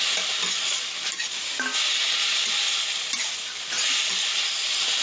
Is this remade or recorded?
recorded